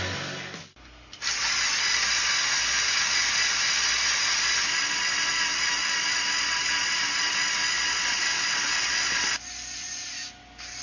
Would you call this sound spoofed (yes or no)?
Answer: no